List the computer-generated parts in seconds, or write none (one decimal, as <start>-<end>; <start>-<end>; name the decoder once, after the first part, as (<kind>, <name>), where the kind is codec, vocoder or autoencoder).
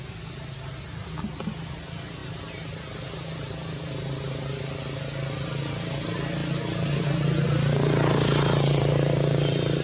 none